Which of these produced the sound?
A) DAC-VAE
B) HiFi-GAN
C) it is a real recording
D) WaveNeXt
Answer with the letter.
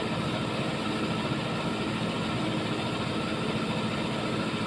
C